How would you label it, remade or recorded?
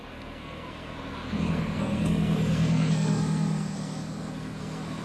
remade